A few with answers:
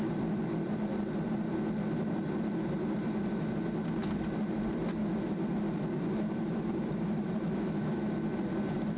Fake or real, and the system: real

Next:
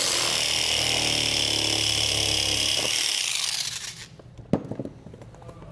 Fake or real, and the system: real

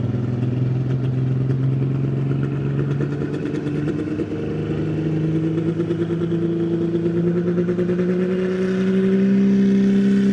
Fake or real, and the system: real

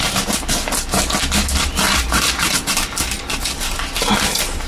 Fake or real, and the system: real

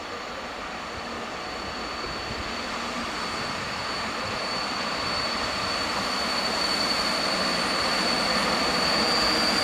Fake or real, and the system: real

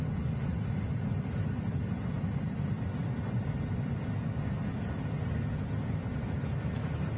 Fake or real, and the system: real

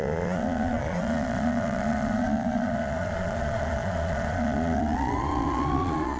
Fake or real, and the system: fake, vocoder, Vocos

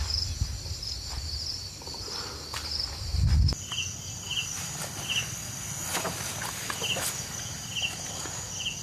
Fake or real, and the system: real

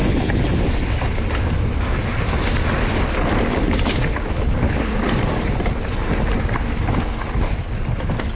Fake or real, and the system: real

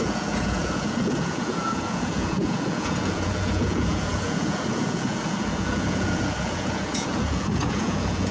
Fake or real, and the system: fake, vocoder, Vocos